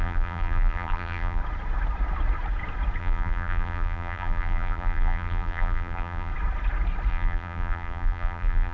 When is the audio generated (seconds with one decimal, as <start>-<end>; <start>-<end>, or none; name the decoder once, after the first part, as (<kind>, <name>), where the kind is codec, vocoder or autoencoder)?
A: 0.0-1.4 (vocoder, BigVGAN v2); 3.0-6.3; 7.1-8.7